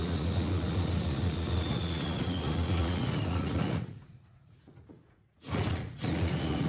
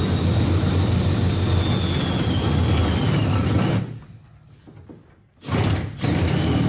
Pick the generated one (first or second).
first